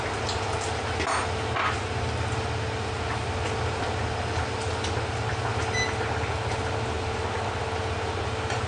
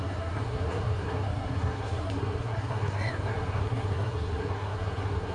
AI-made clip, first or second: second